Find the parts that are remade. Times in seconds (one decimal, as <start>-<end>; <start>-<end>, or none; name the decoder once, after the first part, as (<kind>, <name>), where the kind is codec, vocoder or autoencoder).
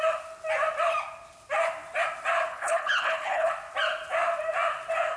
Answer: 2.5-3.5 (codec, HILCodec)